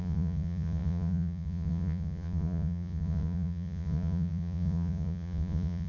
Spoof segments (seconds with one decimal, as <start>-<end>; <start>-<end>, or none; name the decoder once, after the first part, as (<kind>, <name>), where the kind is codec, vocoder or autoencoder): 0.0-5.9 (vocoder, Vocos)